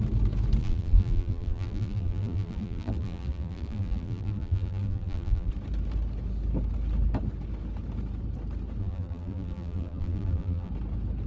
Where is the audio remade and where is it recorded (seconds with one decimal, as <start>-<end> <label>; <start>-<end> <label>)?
0.0-0.6 recorded; 0.6-5.5 remade; 5.5-8.8 recorded; 8.8-10.7 remade; 10.7-11.3 recorded